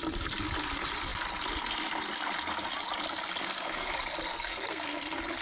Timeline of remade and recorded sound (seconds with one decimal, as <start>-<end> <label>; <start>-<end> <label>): 0.0-3.4 recorded; 3.4-3.9 remade; 3.9-4.3 recorded; 4.3-5.0 remade; 5.0-5.4 recorded